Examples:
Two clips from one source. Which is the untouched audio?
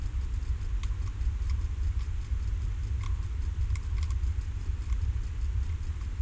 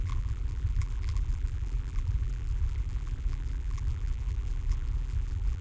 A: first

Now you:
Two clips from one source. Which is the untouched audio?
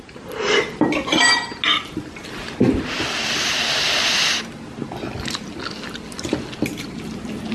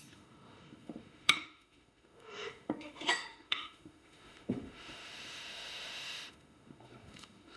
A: first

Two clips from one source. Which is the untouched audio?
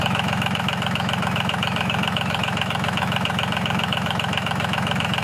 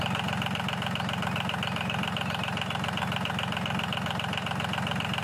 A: second